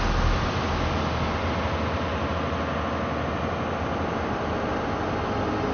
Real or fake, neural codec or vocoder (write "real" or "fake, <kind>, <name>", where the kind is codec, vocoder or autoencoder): real